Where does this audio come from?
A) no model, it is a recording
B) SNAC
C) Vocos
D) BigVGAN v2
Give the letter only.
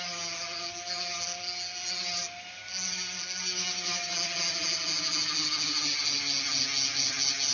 A